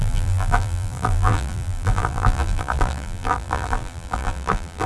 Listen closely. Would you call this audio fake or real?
fake